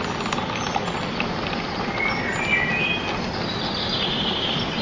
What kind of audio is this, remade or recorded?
recorded